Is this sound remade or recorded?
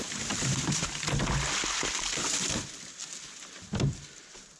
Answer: recorded